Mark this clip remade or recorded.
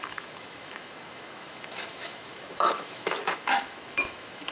remade